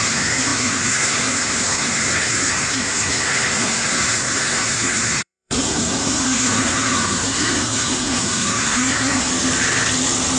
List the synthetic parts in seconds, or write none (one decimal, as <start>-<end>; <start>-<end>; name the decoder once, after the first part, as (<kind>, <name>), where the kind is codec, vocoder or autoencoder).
0.0-9.3 (codec, SNAC)